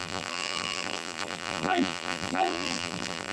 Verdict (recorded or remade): remade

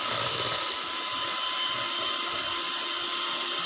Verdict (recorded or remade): remade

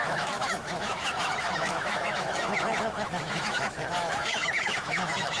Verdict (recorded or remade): remade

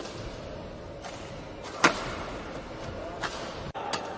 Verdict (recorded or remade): recorded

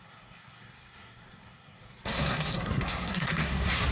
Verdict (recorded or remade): remade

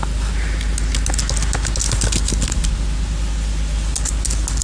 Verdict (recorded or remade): recorded